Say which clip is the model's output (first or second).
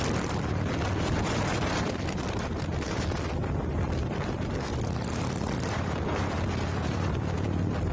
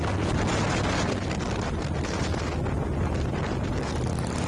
first